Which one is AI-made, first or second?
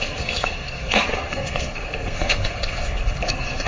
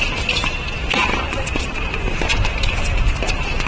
first